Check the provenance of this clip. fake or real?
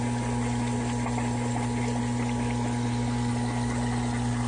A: real